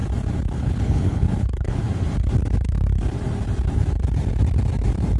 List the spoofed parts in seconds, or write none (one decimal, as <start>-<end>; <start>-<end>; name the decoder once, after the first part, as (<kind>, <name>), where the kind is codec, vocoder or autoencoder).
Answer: 0.6-1.8 (codec, HILCodec)